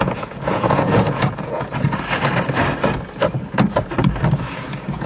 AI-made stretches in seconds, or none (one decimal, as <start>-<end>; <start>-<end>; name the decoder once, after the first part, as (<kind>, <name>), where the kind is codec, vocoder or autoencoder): 0.0-1.9 (vocoder, Vocos); 4.5-5.1